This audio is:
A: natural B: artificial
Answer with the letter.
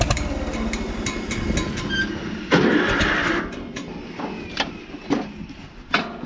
A